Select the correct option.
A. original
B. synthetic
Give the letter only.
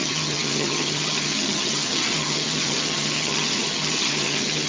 B